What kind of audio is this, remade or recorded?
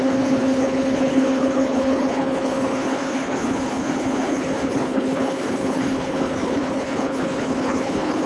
remade